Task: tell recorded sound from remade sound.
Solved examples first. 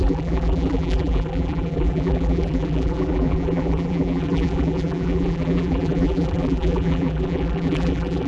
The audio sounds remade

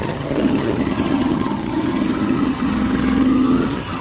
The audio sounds remade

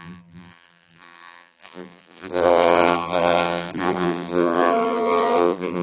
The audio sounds remade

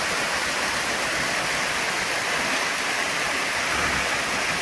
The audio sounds recorded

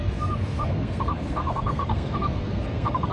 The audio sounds remade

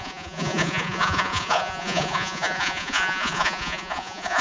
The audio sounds remade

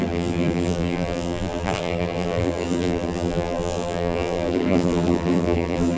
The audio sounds remade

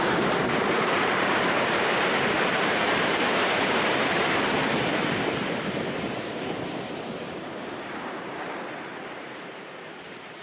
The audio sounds remade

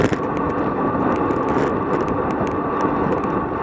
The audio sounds recorded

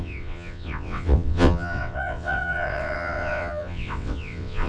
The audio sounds remade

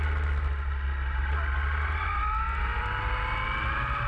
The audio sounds recorded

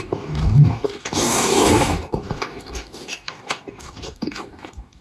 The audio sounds remade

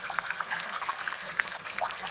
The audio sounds remade